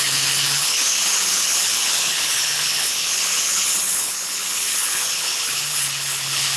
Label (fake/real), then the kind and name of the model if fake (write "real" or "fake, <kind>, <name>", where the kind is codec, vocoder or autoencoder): fake, codec, HILCodec